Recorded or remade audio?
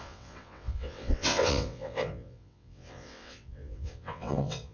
remade